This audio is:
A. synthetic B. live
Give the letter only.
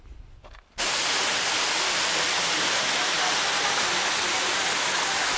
B